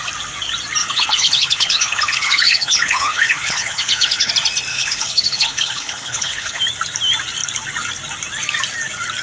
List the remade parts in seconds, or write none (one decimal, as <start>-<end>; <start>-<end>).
0.8-4.3; 4.7-6.6